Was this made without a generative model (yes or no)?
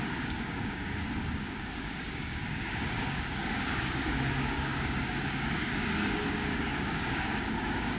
no